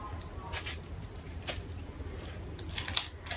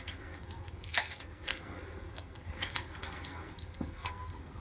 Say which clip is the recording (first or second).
first